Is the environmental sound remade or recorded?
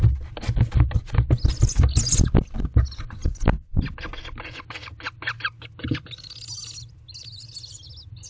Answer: recorded